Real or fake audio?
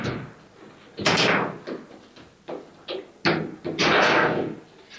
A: real